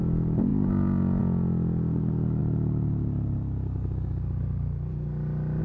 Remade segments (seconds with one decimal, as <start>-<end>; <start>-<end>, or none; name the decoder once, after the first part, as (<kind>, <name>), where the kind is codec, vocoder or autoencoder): none